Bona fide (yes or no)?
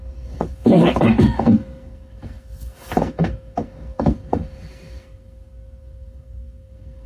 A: no